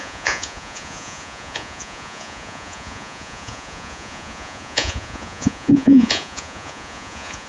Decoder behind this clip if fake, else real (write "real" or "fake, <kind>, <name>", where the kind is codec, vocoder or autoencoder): fake, vocoder, Vocos